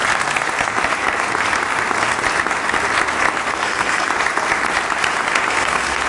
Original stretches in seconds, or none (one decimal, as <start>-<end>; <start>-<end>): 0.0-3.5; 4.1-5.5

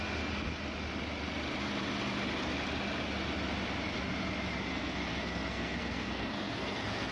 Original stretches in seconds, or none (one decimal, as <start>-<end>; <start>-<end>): 0.0-4.7

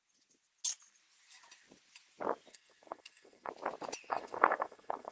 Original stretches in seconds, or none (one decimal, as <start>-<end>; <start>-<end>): 0.0-2.5; 3.5-4.1

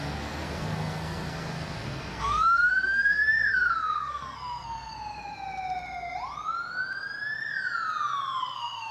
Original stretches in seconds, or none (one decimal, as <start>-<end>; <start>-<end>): 4.9-8.4

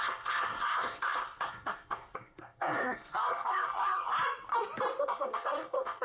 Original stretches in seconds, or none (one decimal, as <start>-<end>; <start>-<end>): 4.1-5.0